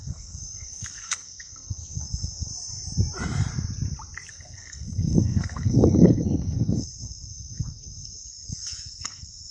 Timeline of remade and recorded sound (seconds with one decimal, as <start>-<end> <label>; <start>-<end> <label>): 0.0-2.5 remade; 2.5-4.3 recorded; 4.3-9.5 remade